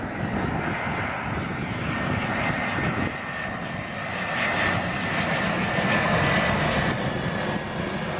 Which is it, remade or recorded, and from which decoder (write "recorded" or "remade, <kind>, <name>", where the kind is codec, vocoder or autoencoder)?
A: recorded